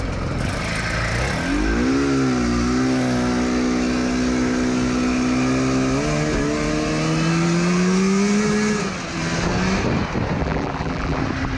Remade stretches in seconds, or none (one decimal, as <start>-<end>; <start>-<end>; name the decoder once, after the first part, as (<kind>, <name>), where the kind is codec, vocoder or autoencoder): 10.4-11.2 (vocoder, BigVGAN v2)